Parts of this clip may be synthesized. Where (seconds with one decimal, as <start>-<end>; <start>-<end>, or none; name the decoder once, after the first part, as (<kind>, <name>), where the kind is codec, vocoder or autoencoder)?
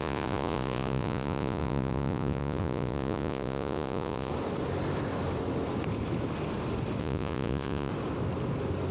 0.0-4.3 (vocoder, Vocos); 7.0-7.9